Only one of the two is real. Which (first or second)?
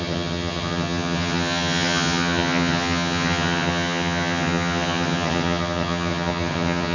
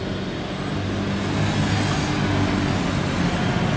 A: second